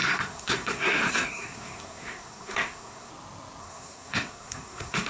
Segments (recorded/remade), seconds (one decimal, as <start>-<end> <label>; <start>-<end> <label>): 0.0-3.1 remade; 3.1-3.6 recorded; 3.6-5.1 remade